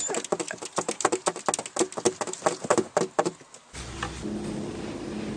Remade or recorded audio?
recorded